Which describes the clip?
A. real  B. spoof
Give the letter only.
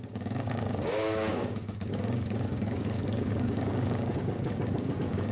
B